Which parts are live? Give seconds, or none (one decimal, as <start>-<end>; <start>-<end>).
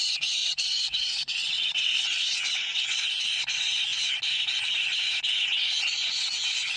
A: 0.0-0.4; 3.0-6.8